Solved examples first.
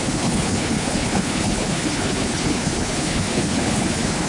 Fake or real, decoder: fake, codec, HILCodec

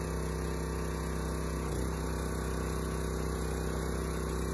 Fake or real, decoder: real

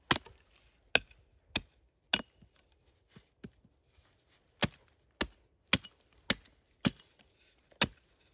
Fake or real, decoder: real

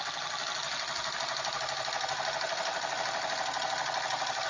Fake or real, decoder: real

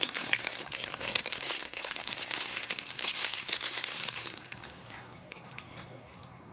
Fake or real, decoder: fake, codec, SNAC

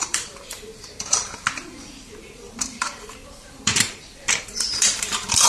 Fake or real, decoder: fake, vocoder, BigVGAN v2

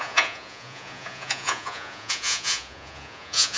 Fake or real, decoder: fake, vocoder, Vocos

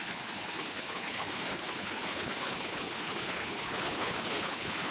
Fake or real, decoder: fake, codec, HILCodec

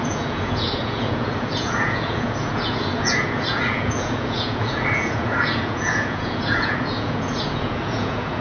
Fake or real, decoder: fake, vocoder, Vocos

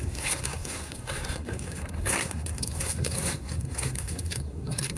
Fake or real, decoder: fake, codec, SNAC